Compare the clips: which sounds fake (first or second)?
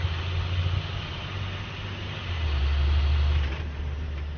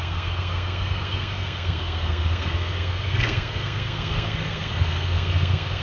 second